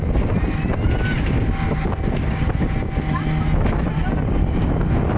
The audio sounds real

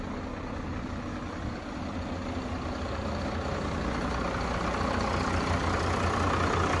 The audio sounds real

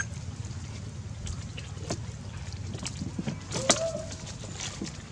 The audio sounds real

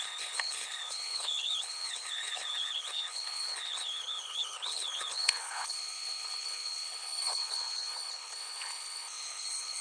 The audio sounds fake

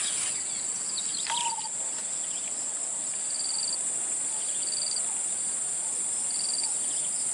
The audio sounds real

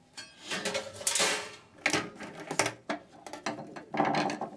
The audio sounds real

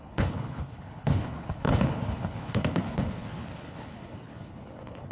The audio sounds fake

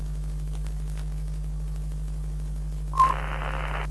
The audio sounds real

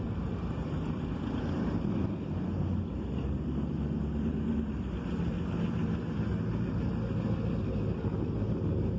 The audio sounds real